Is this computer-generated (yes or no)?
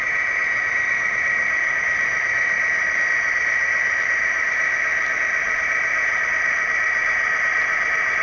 yes